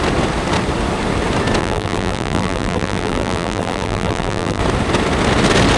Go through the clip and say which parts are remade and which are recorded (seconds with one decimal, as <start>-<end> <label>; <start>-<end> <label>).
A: 0.0-1.6 recorded; 1.6-4.6 remade; 4.6-5.8 recorded